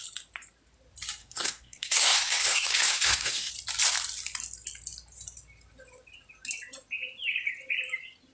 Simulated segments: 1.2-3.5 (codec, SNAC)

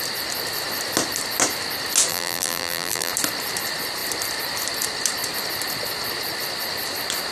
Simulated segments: 2.1-3.1 (vocoder, BigVGAN v2)

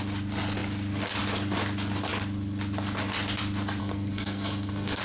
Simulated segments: 3.8-5.0 (codec, SNAC)

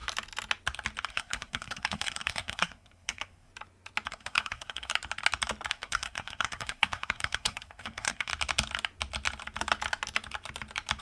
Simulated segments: 1.1-3.5 (codec, SNAC); 4.1-4.9; 5.7-8.3

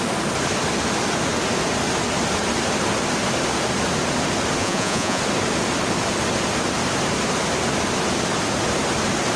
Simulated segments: 4.6-5.2 (vocoder, Vocos)